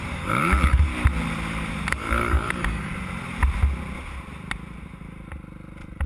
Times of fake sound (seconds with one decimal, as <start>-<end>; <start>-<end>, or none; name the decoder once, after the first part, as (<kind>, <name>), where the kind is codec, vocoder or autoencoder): 0.0-0.9 (codec, DAC); 1.9-2.9